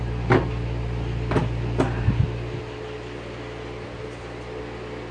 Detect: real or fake real